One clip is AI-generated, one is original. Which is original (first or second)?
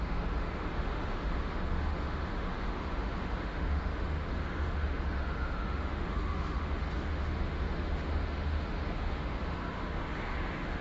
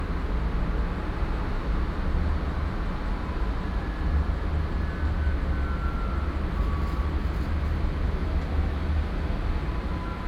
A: second